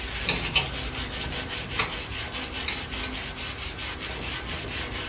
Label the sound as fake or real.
real